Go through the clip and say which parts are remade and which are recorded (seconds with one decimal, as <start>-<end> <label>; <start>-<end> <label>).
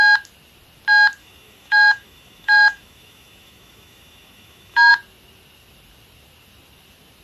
0.0-1.2 recorded; 1.2-4.9 remade; 4.9-7.2 recorded